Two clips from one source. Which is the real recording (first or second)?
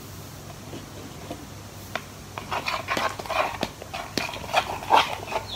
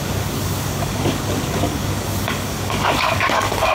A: first